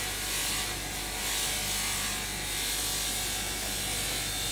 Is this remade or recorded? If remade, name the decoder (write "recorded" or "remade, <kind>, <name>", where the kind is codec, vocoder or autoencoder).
recorded